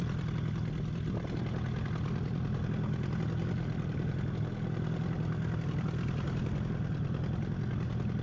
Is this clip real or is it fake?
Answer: real